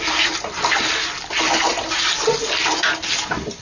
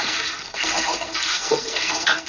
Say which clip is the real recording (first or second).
first